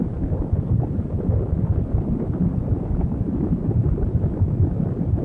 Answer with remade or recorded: recorded